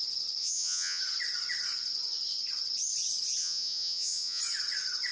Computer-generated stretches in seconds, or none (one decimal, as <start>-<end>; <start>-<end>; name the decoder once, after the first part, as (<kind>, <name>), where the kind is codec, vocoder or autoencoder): 0.4-1.0 (vocoder, Vocos); 3.4-4.4